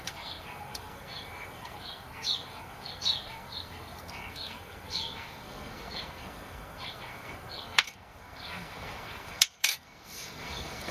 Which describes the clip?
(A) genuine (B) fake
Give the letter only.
B